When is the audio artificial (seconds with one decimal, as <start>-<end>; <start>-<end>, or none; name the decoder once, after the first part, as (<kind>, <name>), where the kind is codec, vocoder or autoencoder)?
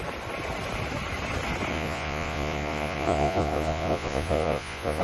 1.7-5.0 (vocoder, Vocos)